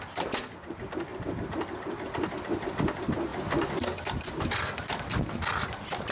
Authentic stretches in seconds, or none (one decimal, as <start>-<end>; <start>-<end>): 0.0-3.3; 4.6-6.1